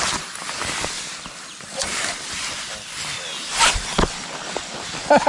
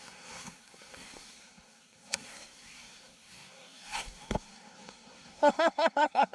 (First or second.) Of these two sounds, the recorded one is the first